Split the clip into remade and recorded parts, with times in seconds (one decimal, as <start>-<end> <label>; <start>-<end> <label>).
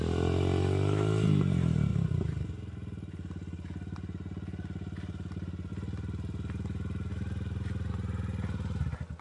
0.0-9.2 recorded